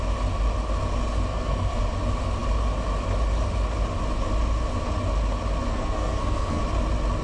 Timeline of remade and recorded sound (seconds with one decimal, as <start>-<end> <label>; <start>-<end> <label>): 0.0-1.3 recorded; 1.3-1.8 remade; 1.8-5.7 recorded; 5.7-6.6 remade; 6.6-7.2 recorded